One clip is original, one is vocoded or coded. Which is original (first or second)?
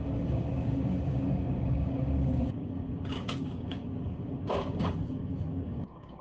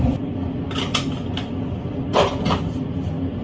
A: second